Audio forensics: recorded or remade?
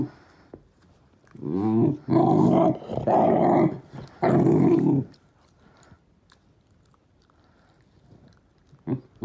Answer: recorded